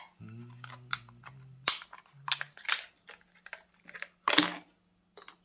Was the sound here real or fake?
real